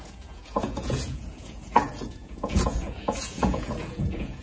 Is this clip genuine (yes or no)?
no